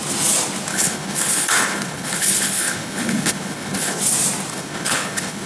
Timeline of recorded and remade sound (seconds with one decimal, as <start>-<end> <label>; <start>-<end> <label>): 0.0-0.7 recorded; 0.7-4.0 remade; 4.0-4.5 recorded; 4.5-5.5 remade